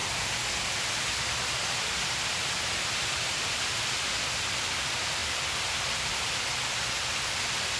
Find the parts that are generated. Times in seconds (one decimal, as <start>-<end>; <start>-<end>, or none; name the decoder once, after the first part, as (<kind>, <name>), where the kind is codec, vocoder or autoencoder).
1.1-7.8 (vocoder, BigVGAN v2)